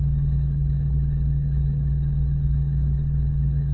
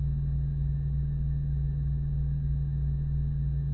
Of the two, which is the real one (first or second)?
second